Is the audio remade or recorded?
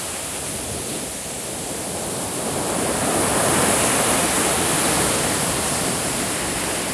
recorded